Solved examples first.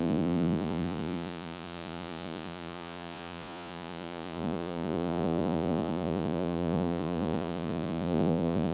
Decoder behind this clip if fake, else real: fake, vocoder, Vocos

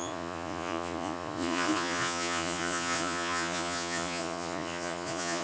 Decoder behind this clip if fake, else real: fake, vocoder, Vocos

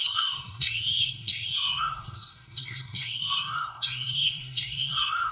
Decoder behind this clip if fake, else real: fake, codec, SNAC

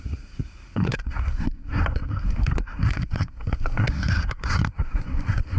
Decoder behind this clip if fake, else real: fake, codec, SNAC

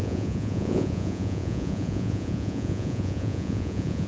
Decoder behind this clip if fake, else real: fake, vocoder, Vocos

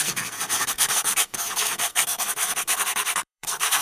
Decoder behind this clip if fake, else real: fake, codec, SNAC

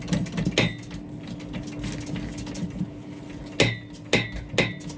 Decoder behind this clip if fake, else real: real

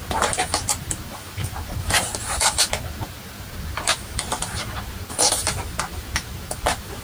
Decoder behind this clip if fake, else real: fake, vocoder, BigVGAN v2